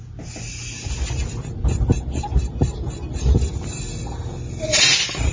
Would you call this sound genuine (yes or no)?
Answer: yes